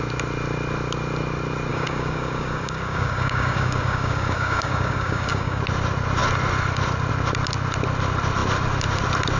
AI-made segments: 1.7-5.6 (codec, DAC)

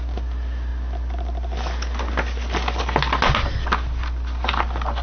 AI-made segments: none

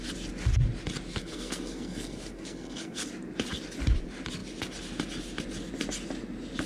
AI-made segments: 1.2-3.1 (codec, SNAC)

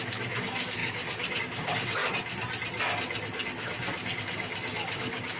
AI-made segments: 0.0-2.0 (codec, DAC); 4.2-5.4

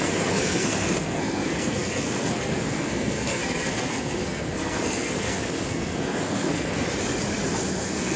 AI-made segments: 0.0-6.7 (codec, SNAC); 7.7-8.2